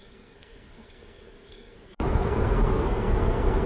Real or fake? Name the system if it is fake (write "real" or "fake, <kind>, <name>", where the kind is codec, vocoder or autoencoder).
fake, codec, SNAC